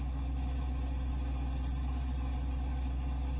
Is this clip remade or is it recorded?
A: recorded